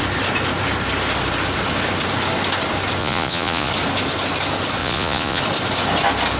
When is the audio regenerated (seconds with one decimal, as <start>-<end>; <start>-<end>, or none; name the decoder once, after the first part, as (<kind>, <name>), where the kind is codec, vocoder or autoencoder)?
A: 3.0-3.7 (vocoder, Vocos); 4.8-5.4